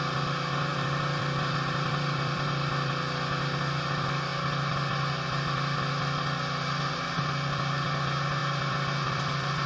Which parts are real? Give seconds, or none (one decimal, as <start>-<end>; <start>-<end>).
0.0-0.7; 2.7-9.7